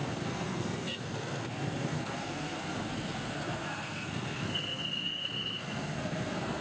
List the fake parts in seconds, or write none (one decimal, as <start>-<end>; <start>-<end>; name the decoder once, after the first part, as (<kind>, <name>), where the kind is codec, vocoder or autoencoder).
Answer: 0.0-6.6 (codec, SNAC)